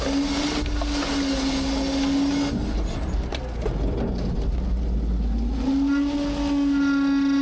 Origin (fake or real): real